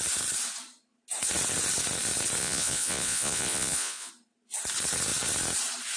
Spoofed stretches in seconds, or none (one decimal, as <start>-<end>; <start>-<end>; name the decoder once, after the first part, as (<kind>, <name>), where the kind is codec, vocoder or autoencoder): 2.4-4.1 (vocoder, Vocos)